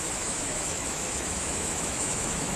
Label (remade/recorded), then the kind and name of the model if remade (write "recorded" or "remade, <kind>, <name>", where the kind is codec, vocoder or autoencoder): remade, autoencoder, DAC-VAE